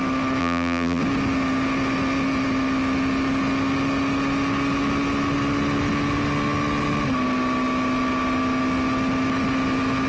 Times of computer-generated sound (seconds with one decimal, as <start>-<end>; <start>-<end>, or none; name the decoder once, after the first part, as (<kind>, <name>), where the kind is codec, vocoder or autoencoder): 0.4-1.0 (vocoder, BigVGAN v2)